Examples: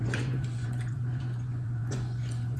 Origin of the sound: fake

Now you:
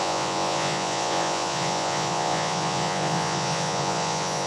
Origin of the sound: fake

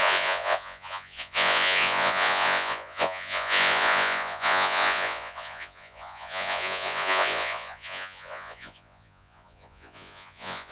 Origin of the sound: fake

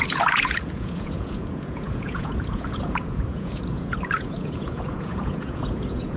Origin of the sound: fake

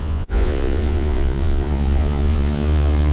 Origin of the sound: fake